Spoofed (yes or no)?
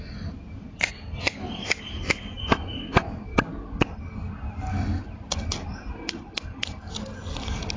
no